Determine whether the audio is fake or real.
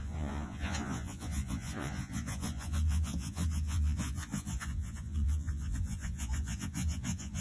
fake